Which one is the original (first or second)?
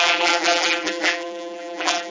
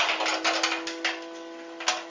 second